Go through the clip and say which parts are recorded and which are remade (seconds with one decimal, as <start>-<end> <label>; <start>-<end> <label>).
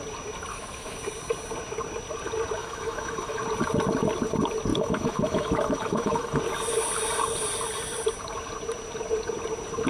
0.0-0.5 recorded; 0.5-1.0 remade; 1.0-2.6 recorded; 2.6-3.4 remade; 3.4-4.7 recorded; 4.7-6.4 remade; 6.4-9.9 recorded